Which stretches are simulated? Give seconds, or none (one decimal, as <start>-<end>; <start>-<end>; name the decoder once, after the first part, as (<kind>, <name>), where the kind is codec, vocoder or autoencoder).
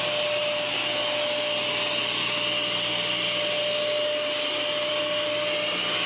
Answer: none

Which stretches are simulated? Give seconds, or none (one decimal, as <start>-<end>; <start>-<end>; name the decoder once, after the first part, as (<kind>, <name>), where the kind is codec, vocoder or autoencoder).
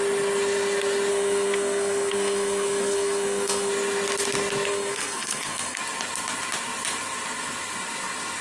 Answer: 1.1-3.7 (codec, SNAC); 4.7-5.8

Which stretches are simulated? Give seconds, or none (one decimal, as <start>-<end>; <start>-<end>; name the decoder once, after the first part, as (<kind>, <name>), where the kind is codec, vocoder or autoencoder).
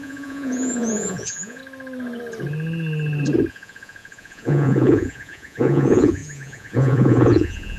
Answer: 0.0-1.6 (vocoder, Vocos); 3.5-7.8